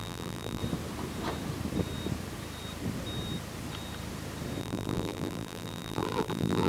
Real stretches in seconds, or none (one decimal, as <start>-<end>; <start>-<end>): 0.6-4.6